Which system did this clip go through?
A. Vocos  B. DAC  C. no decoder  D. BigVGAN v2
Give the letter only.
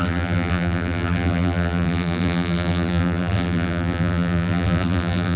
D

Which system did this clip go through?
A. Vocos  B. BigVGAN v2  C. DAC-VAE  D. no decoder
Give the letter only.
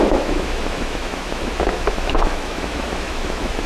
C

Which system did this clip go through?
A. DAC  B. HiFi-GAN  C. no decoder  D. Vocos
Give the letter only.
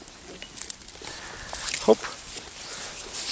C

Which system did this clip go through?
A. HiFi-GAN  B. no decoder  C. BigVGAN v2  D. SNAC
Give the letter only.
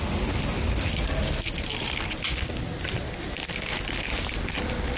B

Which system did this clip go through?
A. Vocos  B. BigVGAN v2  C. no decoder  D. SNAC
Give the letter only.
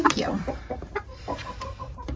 B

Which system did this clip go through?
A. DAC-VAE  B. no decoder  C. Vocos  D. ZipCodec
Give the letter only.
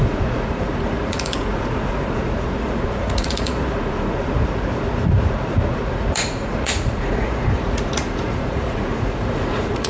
C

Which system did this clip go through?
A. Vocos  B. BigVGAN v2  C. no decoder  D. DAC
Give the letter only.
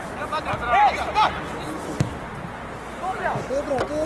C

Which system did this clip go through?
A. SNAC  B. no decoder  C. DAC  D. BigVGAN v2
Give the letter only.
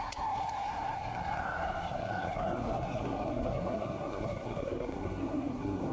A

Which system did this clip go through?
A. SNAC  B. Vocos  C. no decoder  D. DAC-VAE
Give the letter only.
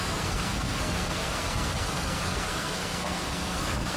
A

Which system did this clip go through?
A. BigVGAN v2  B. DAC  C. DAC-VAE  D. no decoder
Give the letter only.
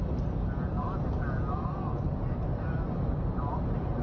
D